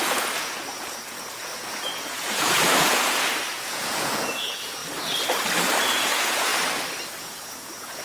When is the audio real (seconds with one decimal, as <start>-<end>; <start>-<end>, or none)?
4.8-5.8; 6.5-7.2